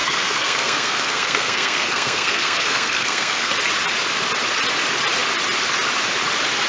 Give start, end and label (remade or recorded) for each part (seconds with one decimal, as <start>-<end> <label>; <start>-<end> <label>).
0.0-3.5 remade; 3.5-6.7 recorded